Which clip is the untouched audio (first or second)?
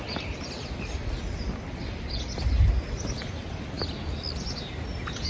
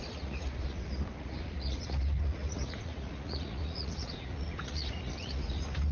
first